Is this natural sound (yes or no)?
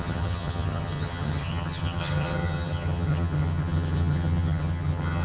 no